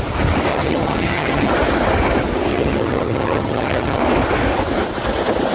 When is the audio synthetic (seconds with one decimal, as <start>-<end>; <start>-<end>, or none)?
0.5-1.5; 2.5-4.0